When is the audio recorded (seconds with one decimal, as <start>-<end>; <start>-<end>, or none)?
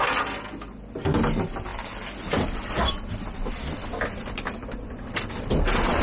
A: 0.0-6.0